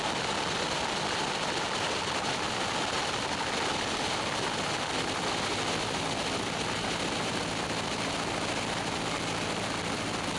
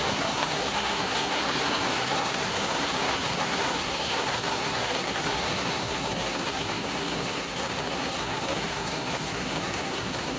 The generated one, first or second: second